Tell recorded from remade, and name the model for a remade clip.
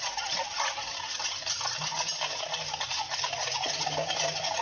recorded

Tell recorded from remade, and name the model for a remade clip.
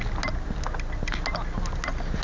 recorded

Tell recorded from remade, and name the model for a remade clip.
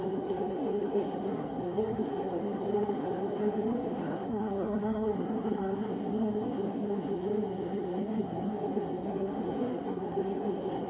remade, codec, SNAC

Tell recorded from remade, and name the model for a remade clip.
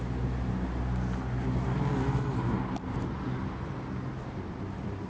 recorded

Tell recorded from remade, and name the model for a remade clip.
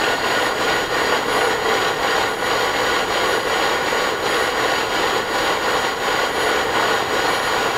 recorded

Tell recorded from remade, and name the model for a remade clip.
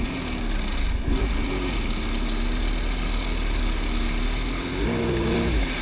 recorded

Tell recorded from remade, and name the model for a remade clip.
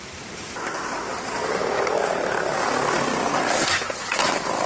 recorded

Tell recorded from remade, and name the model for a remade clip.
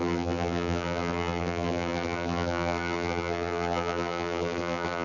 remade, vocoder, BigVGAN v2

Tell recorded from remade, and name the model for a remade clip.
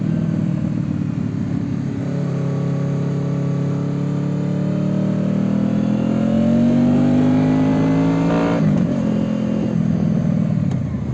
recorded